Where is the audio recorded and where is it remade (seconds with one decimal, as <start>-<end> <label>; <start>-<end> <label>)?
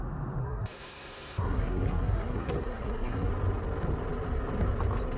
0.0-0.4 recorded; 0.4-3.3 remade; 3.3-5.2 recorded